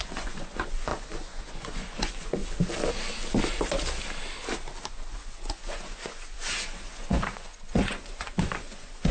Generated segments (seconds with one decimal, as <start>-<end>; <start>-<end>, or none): 0.0-2.4; 4.9-9.1